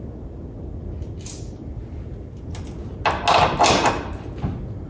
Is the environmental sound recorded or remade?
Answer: recorded